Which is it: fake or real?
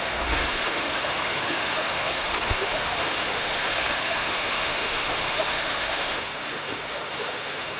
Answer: fake